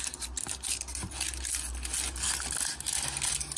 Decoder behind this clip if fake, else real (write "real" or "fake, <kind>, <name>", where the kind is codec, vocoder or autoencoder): real